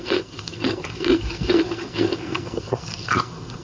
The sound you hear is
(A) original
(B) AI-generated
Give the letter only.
B